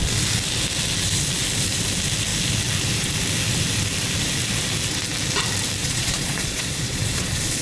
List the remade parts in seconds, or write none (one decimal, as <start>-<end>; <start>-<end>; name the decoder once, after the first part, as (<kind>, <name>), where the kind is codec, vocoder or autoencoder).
5.8-7.6 (vocoder, Vocos)